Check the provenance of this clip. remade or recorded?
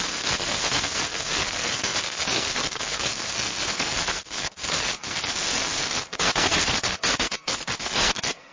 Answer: remade